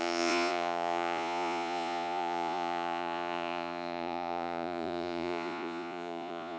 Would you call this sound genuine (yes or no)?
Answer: no